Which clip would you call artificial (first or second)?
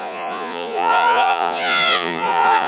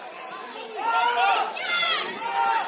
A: first